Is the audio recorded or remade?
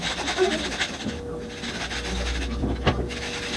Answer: recorded